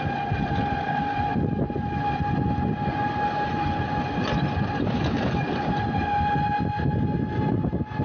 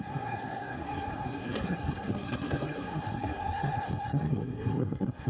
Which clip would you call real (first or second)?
first